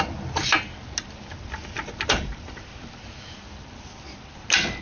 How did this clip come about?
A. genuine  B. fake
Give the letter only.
A